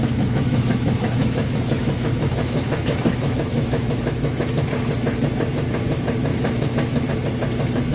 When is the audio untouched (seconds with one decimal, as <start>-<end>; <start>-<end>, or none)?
4.7-6.3; 7.1-7.9